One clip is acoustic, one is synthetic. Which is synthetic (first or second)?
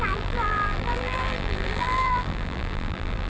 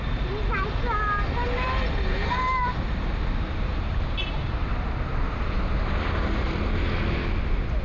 first